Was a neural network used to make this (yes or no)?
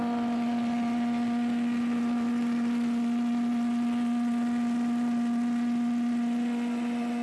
no